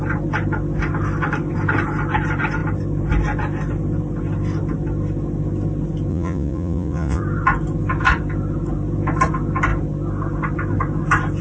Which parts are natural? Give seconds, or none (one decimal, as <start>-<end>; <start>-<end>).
0.0-6.1; 7.2-11.4

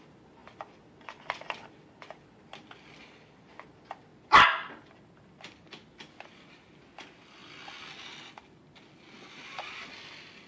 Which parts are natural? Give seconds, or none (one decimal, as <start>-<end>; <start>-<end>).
0.0-10.5

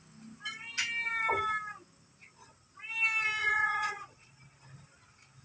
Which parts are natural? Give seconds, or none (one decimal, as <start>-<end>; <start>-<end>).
0.0-3.4; 4.3-5.4

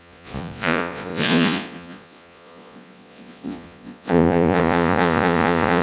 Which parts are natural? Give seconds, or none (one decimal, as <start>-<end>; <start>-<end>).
none

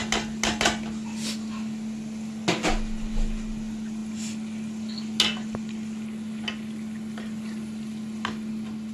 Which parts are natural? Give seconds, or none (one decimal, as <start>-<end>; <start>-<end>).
0.0-8.9

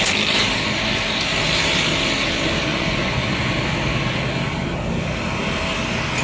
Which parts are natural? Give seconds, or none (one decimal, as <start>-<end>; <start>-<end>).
0.0-2.7; 3.5-6.2

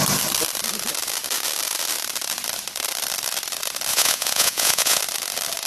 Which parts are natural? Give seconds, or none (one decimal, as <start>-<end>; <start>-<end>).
0.0-3.9; 5.0-5.7

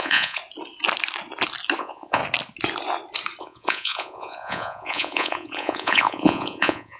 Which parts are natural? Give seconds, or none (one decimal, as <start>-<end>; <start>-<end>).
0.4-1.8; 2.2-3.4